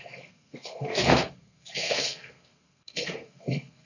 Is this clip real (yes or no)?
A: no